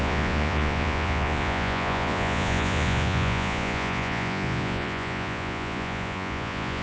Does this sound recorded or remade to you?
remade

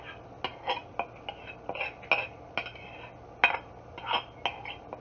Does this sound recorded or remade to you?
recorded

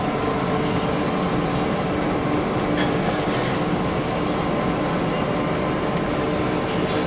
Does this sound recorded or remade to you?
recorded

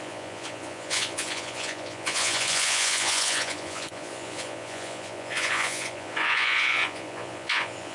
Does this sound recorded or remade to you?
remade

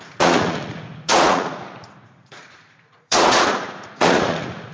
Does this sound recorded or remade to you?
remade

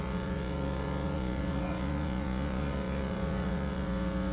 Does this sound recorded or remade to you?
remade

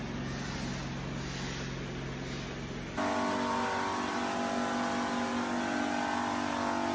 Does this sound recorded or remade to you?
recorded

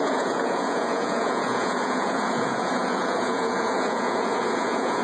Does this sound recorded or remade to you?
remade